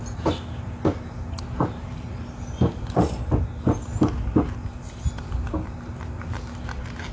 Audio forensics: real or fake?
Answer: real